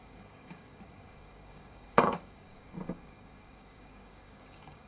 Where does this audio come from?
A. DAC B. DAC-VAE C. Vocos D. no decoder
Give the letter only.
A